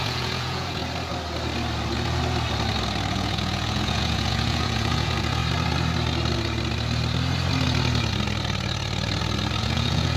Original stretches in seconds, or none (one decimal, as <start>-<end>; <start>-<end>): 0.8-3.1; 5.4-9.6